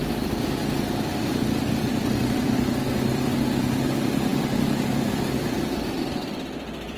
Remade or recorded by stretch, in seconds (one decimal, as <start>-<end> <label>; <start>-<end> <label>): 0.0-7.0 remade